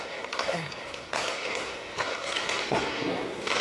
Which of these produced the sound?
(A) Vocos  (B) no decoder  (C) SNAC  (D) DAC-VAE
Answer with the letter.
C